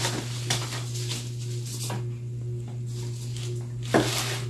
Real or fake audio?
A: real